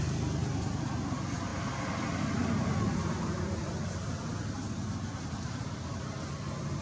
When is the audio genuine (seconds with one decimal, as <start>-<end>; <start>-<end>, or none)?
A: 0.0-6.8